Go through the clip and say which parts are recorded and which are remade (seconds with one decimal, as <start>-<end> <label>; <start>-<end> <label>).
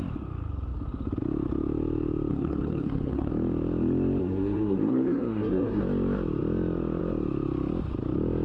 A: 0.0-2.3 recorded; 2.3-3.3 remade; 3.3-4.2 recorded; 4.2-5.8 remade; 5.8-8.4 recorded